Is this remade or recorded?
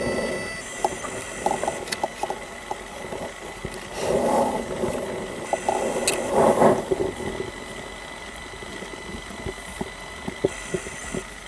recorded